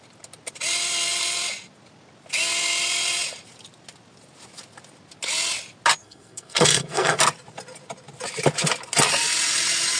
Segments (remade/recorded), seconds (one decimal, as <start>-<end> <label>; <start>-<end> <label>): 0.0-6.0 recorded; 6.0-7.2 remade; 7.2-10.0 recorded